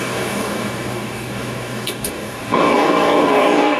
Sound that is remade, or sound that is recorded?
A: remade